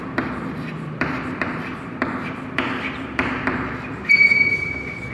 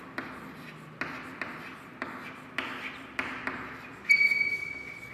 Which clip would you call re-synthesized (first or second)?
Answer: first